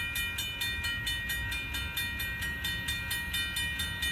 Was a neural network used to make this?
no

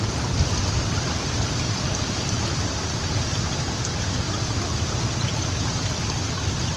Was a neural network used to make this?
no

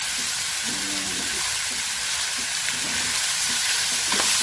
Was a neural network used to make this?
no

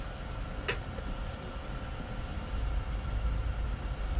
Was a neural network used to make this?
no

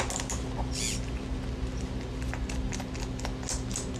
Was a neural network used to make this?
no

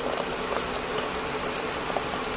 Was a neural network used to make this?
no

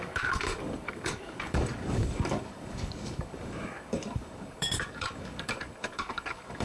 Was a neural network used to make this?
yes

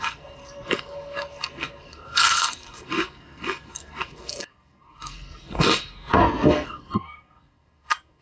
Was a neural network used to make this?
yes